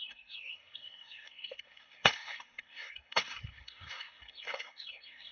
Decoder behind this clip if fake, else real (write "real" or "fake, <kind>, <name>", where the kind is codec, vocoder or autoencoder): fake, codec, SNAC